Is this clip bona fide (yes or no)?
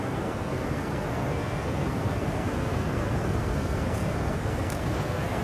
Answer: no